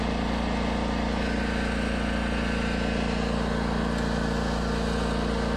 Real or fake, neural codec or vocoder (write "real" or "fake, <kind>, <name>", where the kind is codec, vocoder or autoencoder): real